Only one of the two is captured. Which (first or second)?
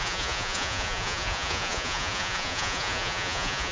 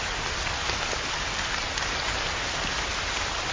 second